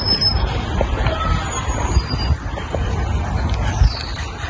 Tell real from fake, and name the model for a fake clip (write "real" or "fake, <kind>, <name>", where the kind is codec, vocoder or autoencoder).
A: real